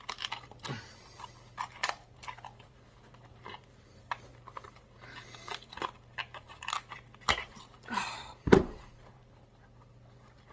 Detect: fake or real fake